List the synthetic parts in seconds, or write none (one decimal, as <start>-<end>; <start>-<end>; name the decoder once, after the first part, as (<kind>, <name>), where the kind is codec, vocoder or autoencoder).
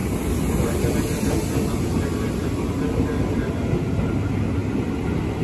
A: none